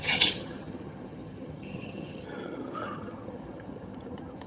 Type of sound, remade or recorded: remade